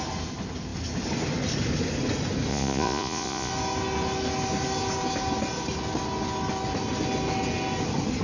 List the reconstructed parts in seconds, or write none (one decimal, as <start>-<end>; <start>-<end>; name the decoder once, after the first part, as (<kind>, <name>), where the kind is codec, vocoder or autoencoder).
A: 2.5-3.5 (vocoder, Vocos)